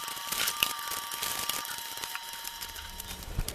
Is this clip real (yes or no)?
no